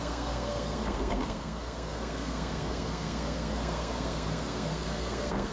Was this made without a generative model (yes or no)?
no